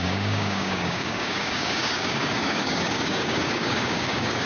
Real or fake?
fake